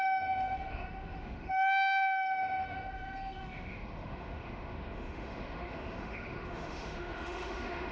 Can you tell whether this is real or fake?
fake